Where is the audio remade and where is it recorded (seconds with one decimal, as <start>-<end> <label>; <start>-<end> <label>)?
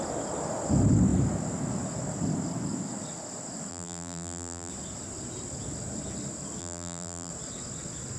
0.0-3.7 recorded; 3.7-4.7 remade; 4.7-6.6 recorded; 6.6-7.3 remade; 7.3-8.2 recorded